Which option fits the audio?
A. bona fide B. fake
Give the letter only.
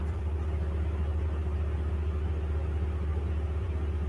B